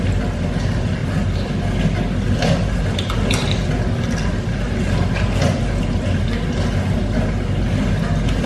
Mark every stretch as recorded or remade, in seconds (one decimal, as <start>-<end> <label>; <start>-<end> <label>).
0.0-8.5 recorded